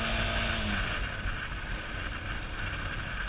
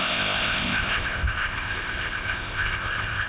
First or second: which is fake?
second